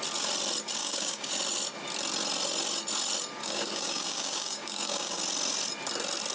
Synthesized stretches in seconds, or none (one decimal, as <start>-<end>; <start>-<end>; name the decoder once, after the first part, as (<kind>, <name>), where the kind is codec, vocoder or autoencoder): 0.8-1.3 (codec, DAC); 3.4-5.2